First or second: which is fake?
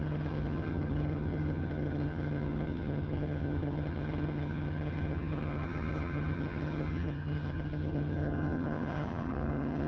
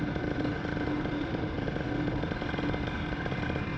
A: first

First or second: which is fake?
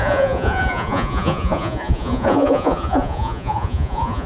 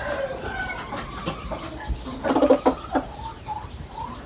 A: first